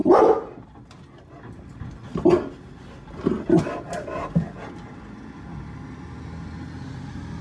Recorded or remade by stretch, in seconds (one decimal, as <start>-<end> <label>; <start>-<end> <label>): 0.0-7.4 recorded